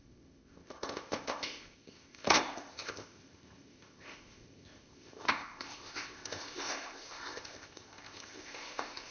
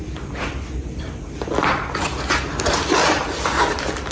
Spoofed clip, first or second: first